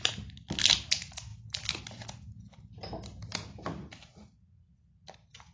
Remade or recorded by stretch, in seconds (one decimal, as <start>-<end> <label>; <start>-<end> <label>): 0.0-5.5 recorded